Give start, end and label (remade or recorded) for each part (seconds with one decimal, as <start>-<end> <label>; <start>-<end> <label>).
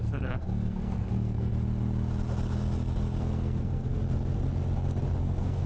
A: 0.0-1.5 remade; 1.5-3.2 recorded; 3.2-4.0 remade; 4.0-5.2 recorded; 5.2-5.7 remade